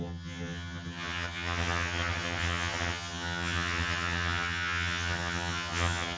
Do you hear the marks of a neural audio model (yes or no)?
yes